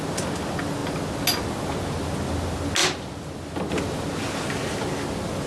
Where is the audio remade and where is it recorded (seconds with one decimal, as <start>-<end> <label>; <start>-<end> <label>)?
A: 0.0-5.5 recorded